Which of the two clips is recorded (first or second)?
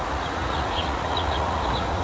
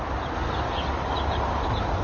second